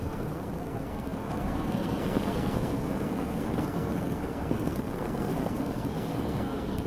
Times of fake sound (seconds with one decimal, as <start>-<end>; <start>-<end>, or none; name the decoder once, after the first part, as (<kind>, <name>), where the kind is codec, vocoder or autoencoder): 0.0-6.9 (codec, SNAC)